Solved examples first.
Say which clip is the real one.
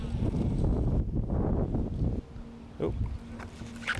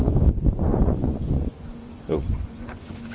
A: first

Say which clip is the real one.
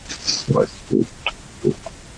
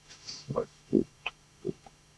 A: first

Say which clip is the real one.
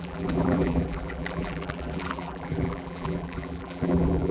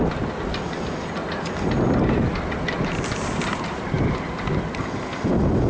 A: second